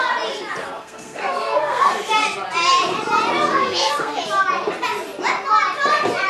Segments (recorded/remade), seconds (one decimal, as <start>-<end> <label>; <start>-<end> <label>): 0.0-0.6 recorded; 0.6-1.9 remade; 1.9-3.5 recorded; 3.5-4.2 remade; 4.2-6.3 recorded